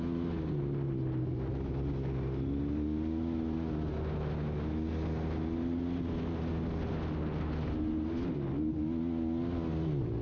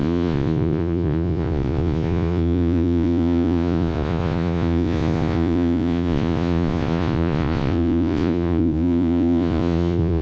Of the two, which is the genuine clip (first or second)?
first